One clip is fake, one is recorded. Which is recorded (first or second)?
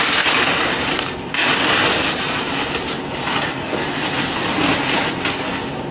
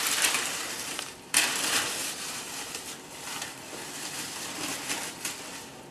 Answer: first